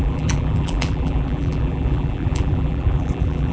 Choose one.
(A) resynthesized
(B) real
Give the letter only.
A